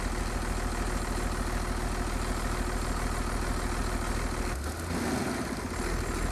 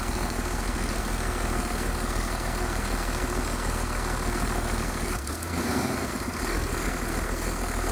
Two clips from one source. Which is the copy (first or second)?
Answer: second